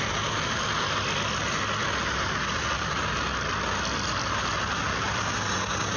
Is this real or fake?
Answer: real